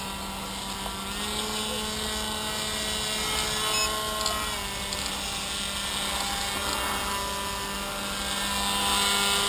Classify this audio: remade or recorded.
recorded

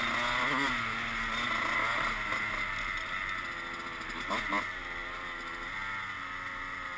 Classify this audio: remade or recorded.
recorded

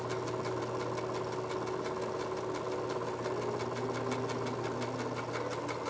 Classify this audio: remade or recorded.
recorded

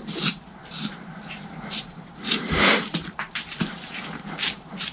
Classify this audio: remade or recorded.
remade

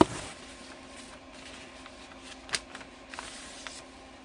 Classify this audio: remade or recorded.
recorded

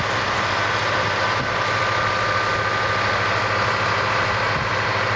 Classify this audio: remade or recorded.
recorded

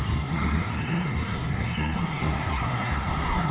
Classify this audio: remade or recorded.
remade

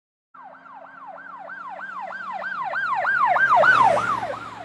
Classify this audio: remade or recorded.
recorded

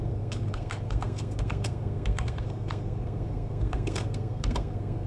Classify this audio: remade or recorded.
remade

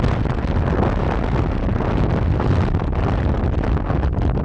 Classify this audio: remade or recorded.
recorded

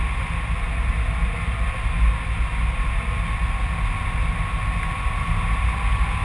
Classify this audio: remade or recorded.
recorded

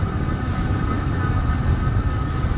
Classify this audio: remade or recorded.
recorded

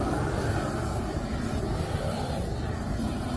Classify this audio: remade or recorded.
recorded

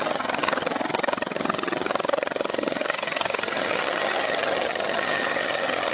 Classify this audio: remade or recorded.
remade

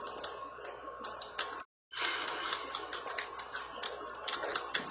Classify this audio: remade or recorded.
recorded